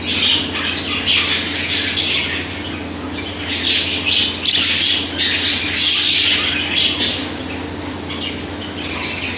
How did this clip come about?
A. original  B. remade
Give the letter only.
A